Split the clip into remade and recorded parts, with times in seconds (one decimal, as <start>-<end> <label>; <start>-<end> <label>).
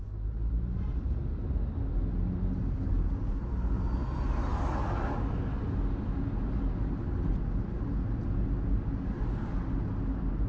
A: 0.0-10.5 recorded